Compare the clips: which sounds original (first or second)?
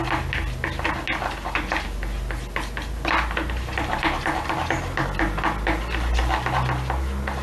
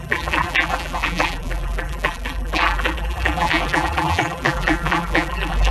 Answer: first